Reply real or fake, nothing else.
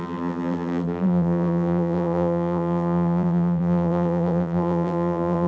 fake